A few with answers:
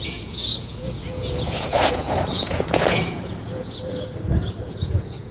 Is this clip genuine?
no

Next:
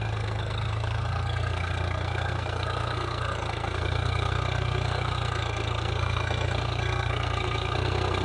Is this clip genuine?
no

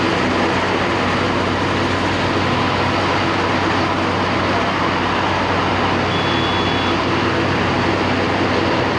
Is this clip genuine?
yes